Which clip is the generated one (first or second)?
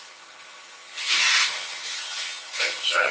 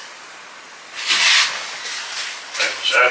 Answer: first